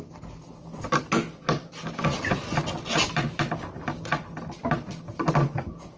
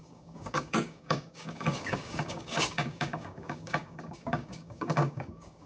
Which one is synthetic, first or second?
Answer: second